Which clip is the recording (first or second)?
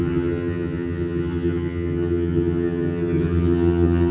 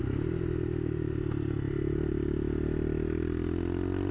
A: second